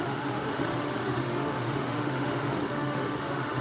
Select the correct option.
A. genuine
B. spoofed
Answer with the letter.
B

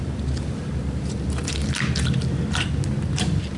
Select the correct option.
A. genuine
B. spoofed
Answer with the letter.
A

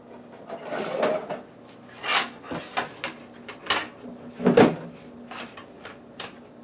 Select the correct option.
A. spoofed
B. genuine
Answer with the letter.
B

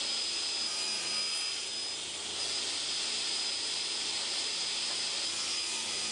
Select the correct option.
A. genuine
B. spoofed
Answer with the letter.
A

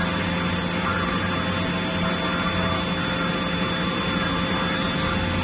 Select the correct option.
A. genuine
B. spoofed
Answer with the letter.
A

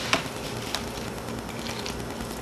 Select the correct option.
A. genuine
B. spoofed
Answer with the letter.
A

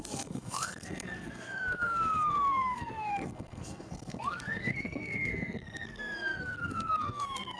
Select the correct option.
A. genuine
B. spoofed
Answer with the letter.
B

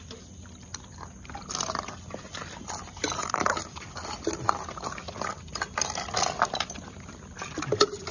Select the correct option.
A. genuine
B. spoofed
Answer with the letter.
A